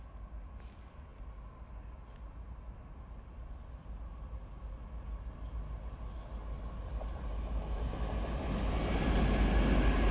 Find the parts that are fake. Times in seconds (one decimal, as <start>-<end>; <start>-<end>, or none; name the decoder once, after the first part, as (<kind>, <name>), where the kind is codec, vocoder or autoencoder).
none

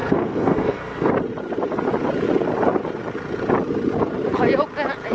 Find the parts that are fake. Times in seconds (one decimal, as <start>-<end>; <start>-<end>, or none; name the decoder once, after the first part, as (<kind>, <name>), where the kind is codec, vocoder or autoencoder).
0.0-1.1 (codec, SNAC)

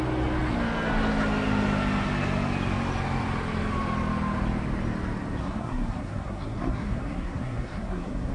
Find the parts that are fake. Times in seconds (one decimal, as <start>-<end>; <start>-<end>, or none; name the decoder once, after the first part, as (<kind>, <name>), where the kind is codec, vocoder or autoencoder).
5.4-8.3 (codec, SNAC)

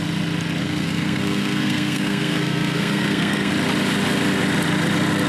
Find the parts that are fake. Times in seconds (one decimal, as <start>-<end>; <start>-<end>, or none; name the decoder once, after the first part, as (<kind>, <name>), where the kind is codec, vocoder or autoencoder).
0.6-3.5 (codec, SNAC)